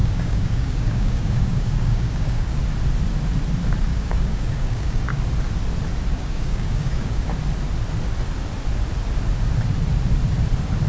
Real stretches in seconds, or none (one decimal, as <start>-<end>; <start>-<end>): 2.6-3.9; 5.2-6.1; 7.3-10.9

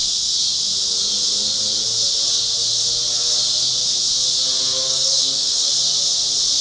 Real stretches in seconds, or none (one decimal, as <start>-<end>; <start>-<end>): 0.0-4.7; 5.7-6.6

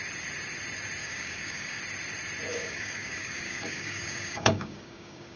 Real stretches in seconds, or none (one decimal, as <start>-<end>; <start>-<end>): 0.0-1.0; 1.8-2.5